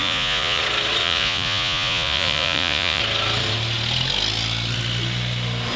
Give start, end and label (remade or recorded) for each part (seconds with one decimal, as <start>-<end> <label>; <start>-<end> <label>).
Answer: 0.0-0.6 remade; 0.6-1.0 recorded; 1.0-3.0 remade; 3.0-5.8 recorded